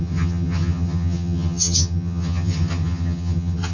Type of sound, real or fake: fake